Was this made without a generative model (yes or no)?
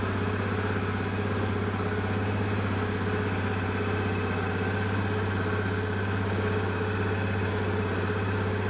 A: yes